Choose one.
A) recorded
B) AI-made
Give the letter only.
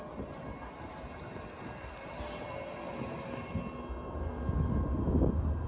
A